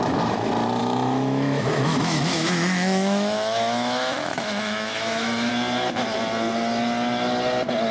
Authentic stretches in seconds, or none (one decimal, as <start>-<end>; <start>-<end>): 0.0-0.8; 5.5-7.9